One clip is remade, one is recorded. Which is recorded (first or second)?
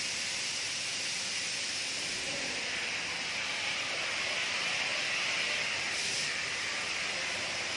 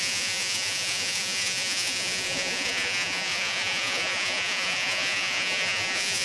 first